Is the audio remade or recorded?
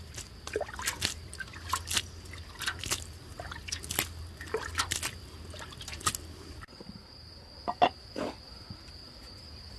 recorded